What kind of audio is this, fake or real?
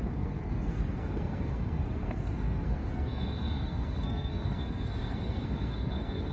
fake